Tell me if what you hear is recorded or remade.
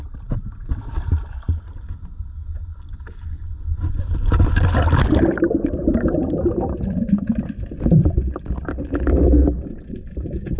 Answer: recorded